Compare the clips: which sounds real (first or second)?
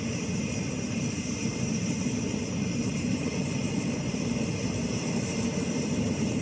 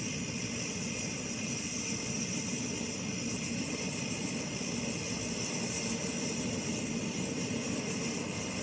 second